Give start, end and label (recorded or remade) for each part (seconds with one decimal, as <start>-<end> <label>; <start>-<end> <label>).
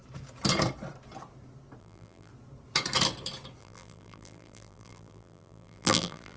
0.0-1.8 recorded; 1.8-2.3 remade; 2.3-3.6 recorded; 3.6-6.4 remade